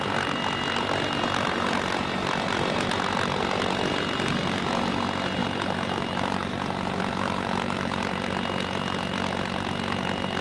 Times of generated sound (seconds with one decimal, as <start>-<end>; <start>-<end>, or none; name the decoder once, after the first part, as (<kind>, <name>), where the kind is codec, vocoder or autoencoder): 5.4-8.0 (vocoder, BigVGAN v2)